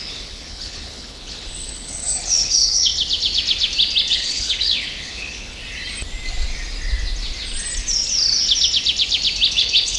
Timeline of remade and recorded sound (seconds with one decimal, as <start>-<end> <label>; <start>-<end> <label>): 0.0-2.9 remade; 2.9-4.1 recorded; 4.1-5.6 remade; 5.6-9.5 recorded; 9.5-10.0 remade